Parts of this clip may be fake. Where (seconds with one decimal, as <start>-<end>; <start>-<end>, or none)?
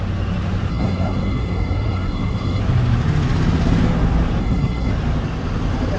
0.7-2.6; 4.4-4.9